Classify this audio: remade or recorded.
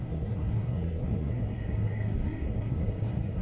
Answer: remade